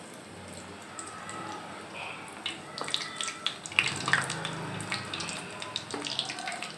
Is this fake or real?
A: real